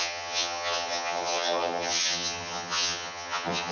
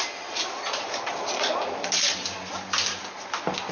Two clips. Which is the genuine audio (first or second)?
second